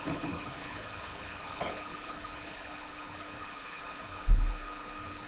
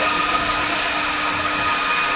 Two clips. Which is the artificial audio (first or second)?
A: first